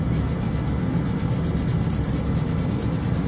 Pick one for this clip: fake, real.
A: real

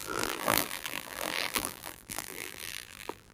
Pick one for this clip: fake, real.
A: fake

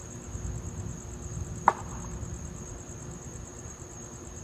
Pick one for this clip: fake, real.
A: real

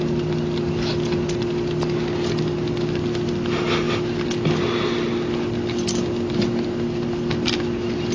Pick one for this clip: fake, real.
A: real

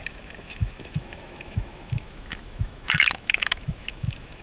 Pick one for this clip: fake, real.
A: fake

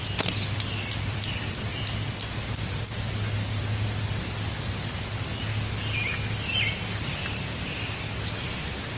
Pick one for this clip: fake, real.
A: real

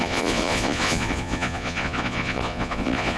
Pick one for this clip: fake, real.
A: fake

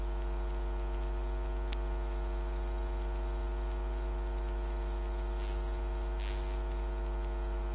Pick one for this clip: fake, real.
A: real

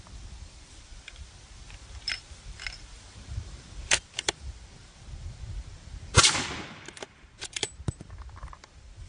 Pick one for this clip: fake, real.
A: fake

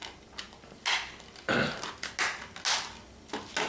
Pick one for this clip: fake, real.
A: real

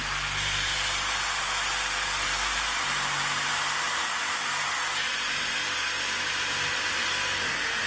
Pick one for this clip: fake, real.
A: real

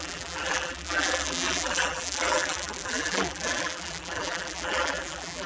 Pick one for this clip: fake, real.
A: fake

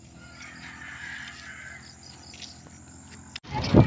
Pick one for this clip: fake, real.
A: real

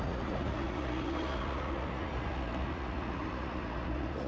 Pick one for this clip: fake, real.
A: fake